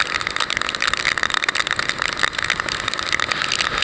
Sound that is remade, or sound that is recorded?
recorded